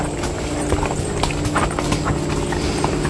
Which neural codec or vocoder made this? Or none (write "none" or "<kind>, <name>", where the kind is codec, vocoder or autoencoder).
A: none